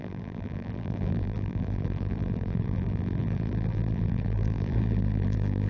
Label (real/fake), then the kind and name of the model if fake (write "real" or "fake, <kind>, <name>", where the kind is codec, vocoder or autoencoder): fake, vocoder, BigVGAN v2